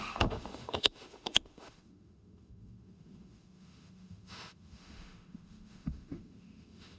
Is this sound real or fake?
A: fake